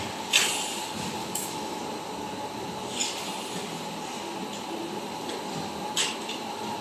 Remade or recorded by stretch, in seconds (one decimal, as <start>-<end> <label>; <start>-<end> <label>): 0.0-1.2 recorded; 1.2-1.8 remade; 1.8-6.8 recorded

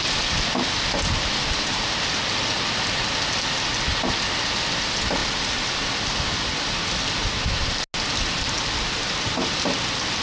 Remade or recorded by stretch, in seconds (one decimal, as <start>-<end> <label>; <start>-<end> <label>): 0.0-1.4 recorded; 1.4-2.0 remade; 2.0-10.2 recorded